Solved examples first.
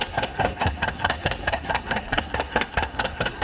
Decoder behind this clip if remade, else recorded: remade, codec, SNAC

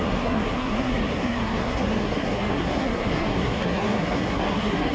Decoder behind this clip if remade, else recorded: remade, codec, SNAC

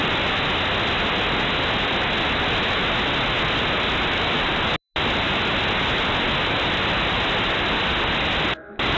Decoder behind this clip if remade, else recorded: recorded